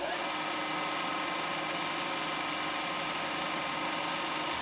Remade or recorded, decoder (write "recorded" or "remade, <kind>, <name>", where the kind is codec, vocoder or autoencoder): recorded